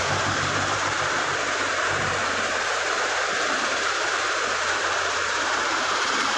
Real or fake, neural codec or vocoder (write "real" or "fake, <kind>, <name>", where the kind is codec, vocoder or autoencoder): fake, vocoder, BigVGAN v2